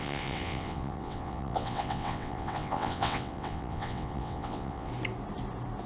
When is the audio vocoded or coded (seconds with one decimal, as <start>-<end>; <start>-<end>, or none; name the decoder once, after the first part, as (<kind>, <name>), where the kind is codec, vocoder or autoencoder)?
0.0-4.9 (vocoder, WaveNeXt)